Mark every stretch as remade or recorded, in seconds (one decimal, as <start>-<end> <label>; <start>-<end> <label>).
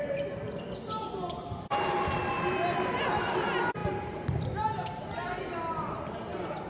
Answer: 0.0-6.7 recorded